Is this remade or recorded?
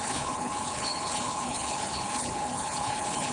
remade